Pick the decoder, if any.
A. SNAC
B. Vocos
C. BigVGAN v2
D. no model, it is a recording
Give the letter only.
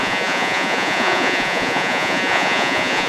B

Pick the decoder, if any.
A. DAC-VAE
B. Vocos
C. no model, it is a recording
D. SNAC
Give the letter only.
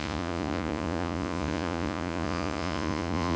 B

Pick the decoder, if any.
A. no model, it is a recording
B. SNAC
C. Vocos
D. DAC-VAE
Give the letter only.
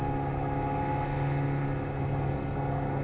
A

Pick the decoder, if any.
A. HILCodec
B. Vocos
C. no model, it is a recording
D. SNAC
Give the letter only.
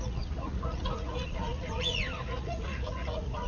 B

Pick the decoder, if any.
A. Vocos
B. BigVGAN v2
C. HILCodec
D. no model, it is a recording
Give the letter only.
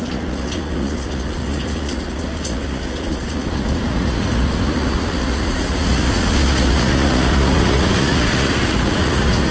A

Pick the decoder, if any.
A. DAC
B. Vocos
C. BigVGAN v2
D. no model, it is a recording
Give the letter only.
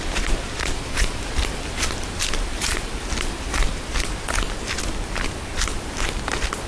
D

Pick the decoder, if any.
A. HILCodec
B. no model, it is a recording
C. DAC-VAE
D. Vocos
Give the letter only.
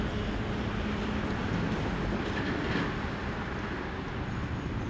B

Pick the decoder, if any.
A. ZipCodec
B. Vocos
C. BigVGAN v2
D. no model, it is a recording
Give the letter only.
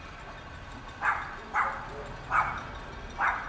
D